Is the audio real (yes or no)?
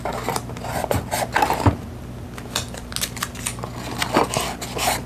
yes